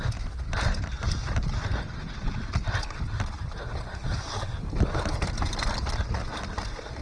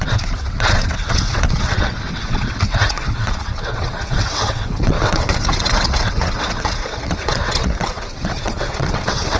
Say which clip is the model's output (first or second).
second